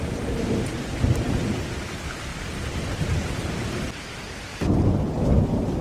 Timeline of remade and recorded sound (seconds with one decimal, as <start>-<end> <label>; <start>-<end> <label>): 0.0-1.2 recorded; 1.2-1.9 remade; 1.9-2.3 recorded; 2.3-3.2 remade; 3.2-5.8 recorded